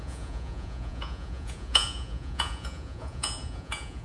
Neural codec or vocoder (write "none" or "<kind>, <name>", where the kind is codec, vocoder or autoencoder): vocoder, Vocos